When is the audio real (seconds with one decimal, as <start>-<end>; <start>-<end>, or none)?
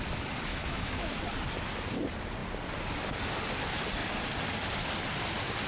0.0-0.5; 1.2-5.7